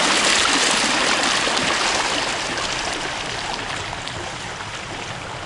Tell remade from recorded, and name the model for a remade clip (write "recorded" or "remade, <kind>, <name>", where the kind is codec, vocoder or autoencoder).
recorded